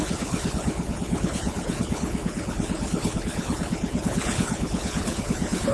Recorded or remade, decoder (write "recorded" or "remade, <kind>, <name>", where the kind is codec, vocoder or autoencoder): remade, codec, HILCodec